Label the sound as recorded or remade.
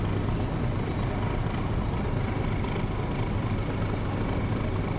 recorded